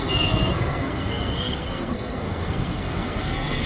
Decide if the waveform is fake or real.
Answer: fake